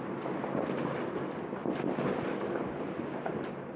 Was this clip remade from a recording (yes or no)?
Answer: no